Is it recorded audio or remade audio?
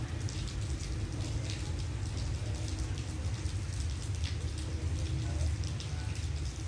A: recorded